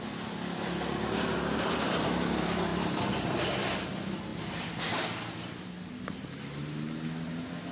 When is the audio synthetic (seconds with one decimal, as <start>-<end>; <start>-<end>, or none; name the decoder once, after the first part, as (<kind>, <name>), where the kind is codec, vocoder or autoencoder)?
none